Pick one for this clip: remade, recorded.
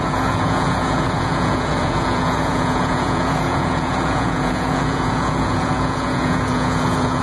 remade